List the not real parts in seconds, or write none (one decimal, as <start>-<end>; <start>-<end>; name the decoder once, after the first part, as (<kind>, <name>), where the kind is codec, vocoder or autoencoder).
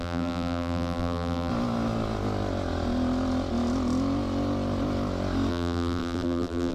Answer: 0.0-1.5 (vocoder, BigVGAN v2); 5.5-6.7